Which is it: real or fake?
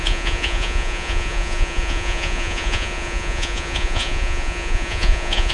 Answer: fake